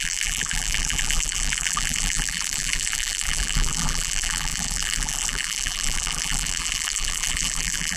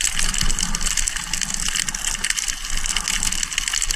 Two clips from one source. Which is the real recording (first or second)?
second